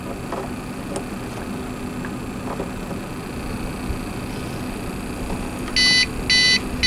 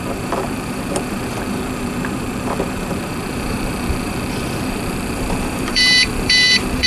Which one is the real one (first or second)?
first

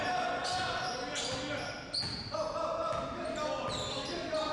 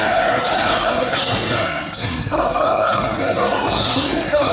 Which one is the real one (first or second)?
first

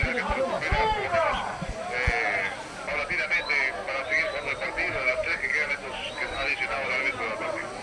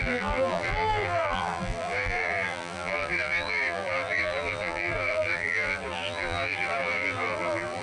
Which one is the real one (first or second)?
first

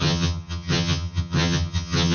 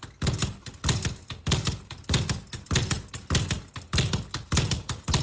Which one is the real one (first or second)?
second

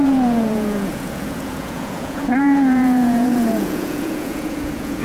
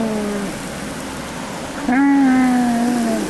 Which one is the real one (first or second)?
second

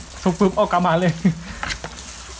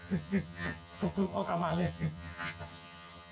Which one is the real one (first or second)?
first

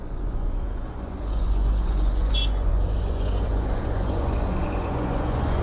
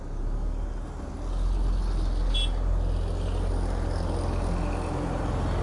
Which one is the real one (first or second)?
second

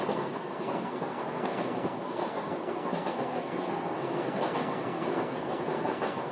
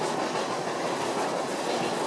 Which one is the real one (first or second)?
second